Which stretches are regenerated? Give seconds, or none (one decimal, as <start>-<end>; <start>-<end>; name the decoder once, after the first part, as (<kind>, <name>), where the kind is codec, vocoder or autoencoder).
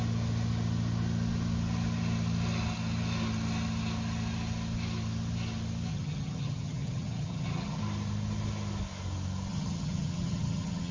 5.9-7.8 (vocoder, HiFi-GAN); 9.5-10.9